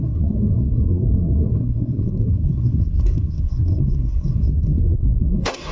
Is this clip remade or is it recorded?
remade